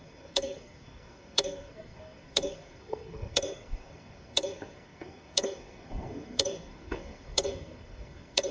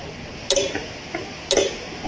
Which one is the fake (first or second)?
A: first